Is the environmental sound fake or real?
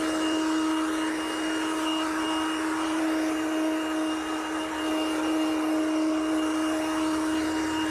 real